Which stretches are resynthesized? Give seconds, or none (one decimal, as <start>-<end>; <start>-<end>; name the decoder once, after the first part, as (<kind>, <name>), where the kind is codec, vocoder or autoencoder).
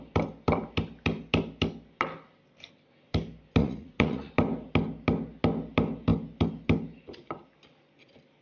3.6-4.3 (vocoder, Vocos)